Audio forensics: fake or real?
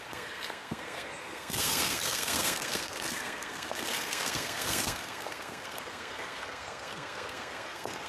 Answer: fake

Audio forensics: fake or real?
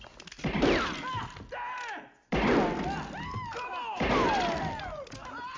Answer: real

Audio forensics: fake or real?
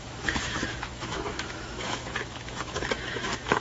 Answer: fake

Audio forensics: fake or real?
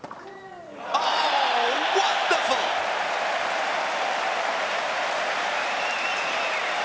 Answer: fake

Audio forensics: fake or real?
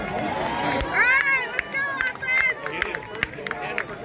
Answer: real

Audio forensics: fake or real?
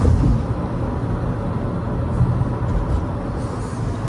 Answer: real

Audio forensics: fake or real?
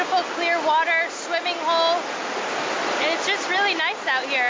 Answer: real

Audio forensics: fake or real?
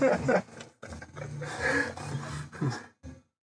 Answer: real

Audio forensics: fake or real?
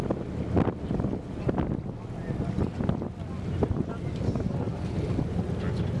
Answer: real